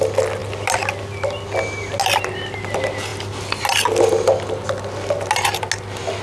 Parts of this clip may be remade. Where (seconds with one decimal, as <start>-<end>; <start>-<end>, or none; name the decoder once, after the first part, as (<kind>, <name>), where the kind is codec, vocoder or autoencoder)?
none